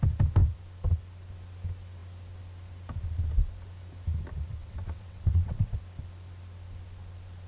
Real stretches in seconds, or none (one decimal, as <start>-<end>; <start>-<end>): 0.0-4.6; 5.8-7.5